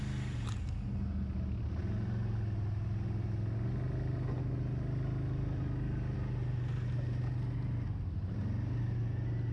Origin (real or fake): real